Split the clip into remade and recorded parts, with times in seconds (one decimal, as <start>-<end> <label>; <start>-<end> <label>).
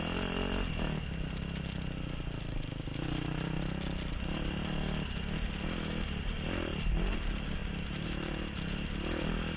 0.0-7.6 recorded; 7.6-8.3 remade; 8.3-9.6 recorded